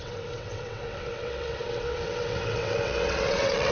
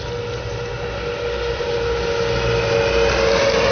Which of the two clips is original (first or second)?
second